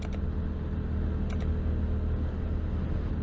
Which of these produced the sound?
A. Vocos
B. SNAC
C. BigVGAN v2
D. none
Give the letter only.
D